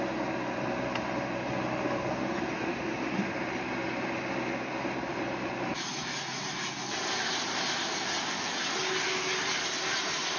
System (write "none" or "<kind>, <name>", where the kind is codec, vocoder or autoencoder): none